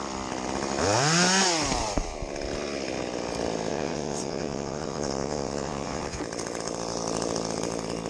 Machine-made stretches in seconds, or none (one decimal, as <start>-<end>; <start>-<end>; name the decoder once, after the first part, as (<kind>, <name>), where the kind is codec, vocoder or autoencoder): 3.7-6.2 (vocoder, WaveNeXt)